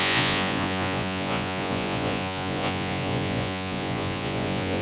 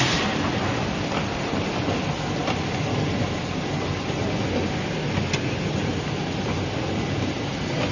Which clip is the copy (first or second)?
first